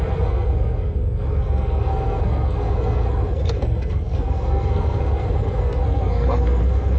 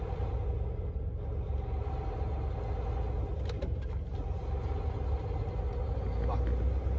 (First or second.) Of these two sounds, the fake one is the first